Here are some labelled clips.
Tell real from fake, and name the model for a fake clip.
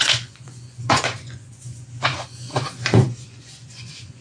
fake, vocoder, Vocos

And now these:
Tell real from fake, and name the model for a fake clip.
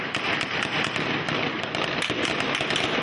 real